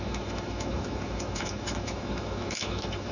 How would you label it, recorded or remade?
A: remade